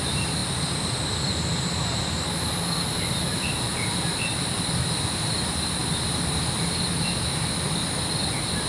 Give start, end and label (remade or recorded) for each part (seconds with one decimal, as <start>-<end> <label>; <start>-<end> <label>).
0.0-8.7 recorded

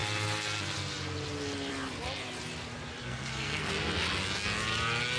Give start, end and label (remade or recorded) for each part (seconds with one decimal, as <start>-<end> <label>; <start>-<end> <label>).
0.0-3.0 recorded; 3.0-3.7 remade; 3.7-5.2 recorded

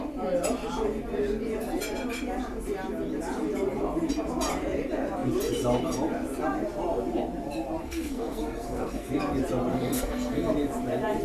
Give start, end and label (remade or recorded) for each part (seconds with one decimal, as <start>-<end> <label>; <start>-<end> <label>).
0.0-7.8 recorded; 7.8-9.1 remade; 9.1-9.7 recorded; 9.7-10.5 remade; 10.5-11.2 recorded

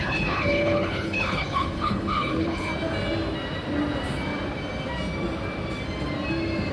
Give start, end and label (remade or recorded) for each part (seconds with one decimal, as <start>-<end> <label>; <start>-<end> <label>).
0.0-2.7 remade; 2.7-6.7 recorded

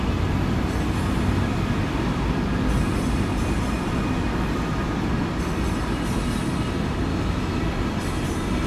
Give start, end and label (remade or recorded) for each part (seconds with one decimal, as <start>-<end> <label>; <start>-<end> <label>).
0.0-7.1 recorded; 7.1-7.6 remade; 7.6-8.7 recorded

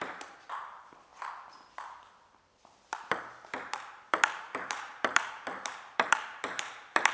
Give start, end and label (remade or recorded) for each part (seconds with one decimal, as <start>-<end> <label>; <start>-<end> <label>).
0.0-1.1 remade; 1.1-4.1 recorded; 4.1-7.1 remade